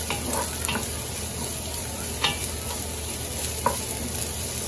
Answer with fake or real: real